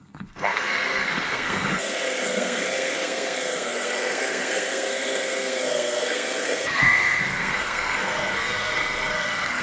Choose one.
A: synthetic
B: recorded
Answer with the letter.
A